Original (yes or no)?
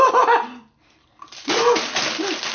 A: yes